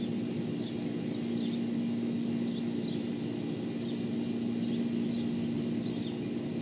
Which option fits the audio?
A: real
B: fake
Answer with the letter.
A